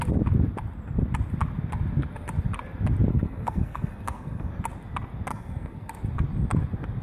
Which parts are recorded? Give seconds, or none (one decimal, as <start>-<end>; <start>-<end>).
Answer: 0.0-3.1; 4.5-5.3; 5.9-7.0

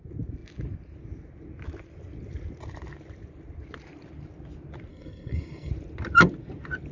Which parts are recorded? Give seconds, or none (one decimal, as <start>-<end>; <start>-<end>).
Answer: 0.0-4.9; 5.7-6.9

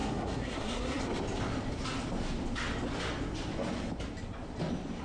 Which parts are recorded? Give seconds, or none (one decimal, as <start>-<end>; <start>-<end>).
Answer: 1.0-5.0